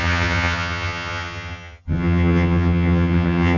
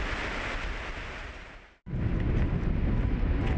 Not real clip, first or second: first